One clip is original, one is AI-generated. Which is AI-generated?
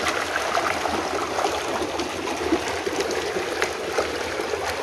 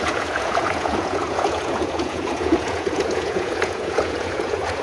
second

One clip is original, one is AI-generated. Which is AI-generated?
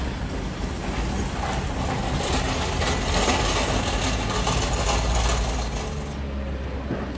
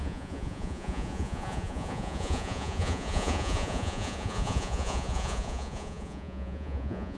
second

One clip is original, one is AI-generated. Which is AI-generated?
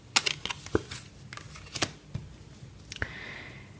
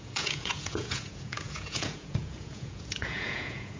second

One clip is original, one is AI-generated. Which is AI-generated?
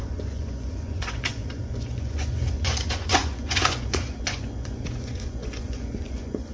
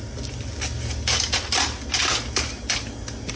first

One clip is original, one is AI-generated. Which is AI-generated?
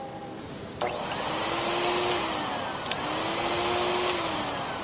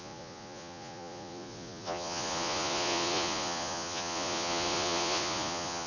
second